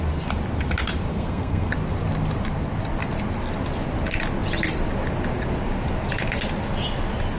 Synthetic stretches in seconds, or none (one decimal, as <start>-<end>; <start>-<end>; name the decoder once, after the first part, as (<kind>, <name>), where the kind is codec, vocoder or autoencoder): 1.1-1.7 (codec, SNAC)